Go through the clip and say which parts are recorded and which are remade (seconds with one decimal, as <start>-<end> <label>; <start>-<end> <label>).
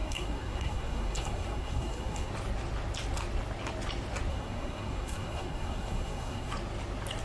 0.0-2.3 remade; 2.3-4.3 recorded; 4.3-6.5 remade; 6.5-7.2 recorded